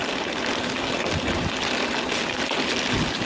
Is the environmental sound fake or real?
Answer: real